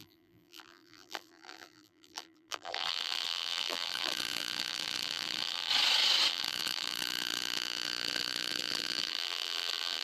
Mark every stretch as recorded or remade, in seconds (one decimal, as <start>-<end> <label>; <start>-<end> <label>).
0.0-5.7 remade; 5.7-6.3 recorded; 6.3-10.0 remade